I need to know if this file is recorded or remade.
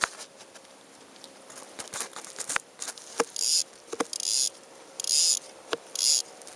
recorded